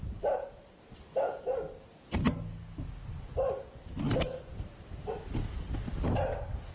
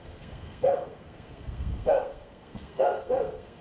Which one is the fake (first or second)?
second